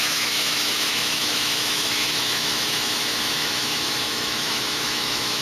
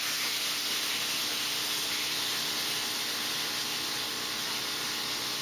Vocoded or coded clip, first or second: first